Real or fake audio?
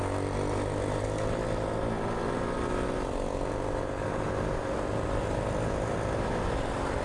real